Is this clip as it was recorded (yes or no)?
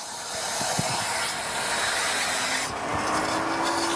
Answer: yes